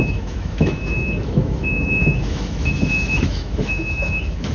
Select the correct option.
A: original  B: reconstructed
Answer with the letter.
B